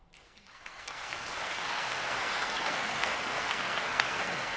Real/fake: fake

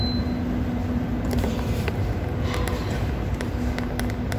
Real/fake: real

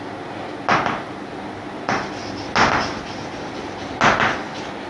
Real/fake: real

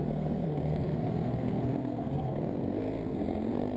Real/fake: fake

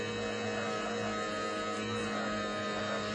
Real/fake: real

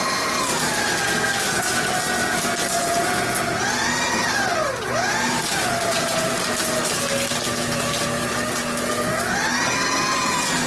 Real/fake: real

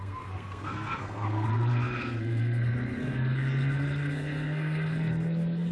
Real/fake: fake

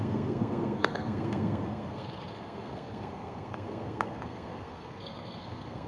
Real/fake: fake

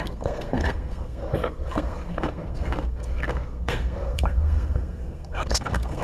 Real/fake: fake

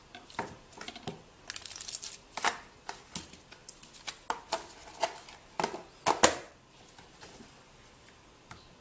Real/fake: real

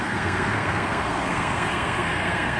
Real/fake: fake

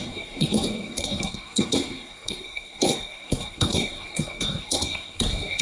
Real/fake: fake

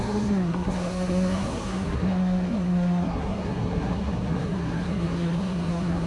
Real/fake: fake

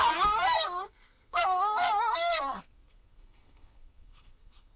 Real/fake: fake